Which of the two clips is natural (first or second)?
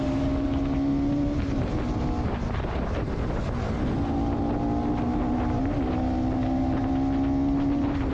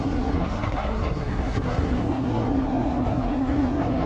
first